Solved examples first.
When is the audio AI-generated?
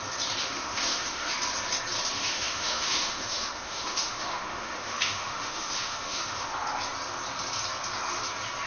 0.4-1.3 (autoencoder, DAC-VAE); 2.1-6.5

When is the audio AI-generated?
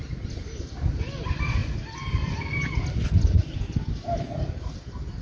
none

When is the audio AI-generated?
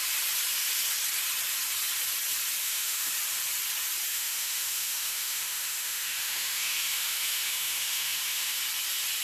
2.6-3.1 (autoencoder, DAC-VAE); 4.1-8.6